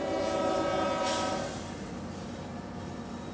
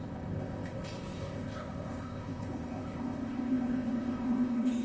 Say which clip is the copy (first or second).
second